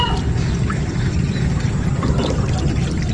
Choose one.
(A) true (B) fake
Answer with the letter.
B